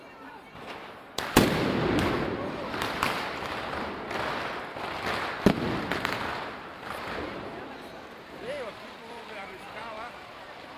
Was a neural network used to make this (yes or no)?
yes